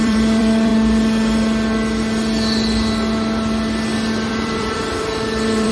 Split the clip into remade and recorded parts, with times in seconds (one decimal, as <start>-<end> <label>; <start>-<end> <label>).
0.0-0.7 remade; 0.7-4.1 recorded; 4.1-5.7 remade